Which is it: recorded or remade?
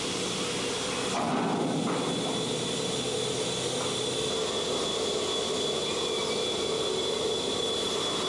recorded